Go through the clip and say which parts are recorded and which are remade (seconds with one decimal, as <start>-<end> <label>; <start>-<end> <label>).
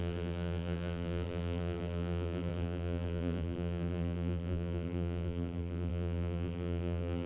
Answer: 0.0-7.3 remade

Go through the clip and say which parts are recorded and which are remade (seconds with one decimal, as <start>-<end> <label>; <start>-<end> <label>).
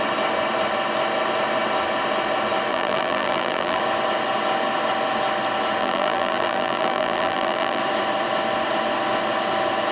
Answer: 0.0-2.7 recorded; 2.7-3.8 remade; 3.8-5.8 recorded; 5.8-7.8 remade; 7.8-9.9 recorded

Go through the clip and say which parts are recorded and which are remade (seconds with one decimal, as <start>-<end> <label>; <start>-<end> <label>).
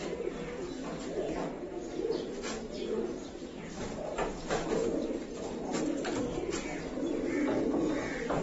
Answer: 0.0-8.4 recorded